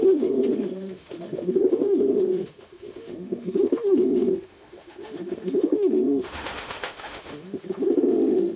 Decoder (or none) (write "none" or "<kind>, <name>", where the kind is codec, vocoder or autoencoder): autoencoder, DAC-VAE